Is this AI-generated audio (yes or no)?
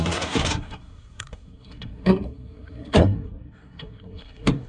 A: yes